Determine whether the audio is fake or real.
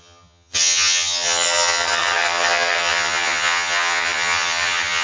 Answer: fake